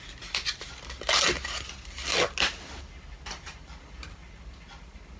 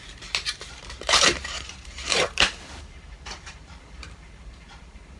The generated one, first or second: second